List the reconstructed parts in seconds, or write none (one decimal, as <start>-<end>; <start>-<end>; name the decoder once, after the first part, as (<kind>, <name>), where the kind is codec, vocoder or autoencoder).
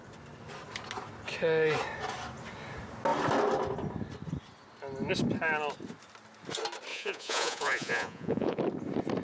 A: 6.9-8.6 (vocoder, Vocos)